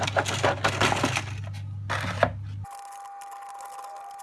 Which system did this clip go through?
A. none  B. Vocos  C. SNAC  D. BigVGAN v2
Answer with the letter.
A